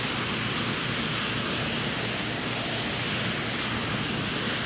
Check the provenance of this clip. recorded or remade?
recorded